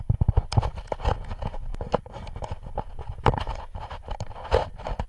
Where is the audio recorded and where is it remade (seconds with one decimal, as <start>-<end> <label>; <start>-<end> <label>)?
0.0-5.1 recorded